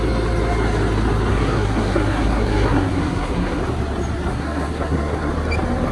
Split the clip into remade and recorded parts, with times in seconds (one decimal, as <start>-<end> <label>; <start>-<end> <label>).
0.0-1.3 recorded; 1.3-3.6 remade; 3.6-4.3 recorded; 4.3-5.3 remade; 5.3-5.9 recorded